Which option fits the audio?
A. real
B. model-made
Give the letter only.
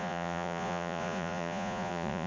B